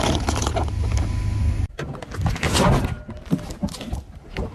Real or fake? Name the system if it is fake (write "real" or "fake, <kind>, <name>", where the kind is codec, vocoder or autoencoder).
real